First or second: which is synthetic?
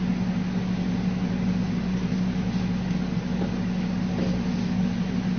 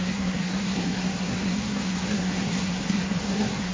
second